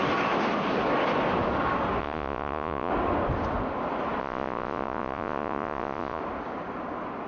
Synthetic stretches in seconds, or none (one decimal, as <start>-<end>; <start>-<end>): 2.0-2.9; 4.2-6.2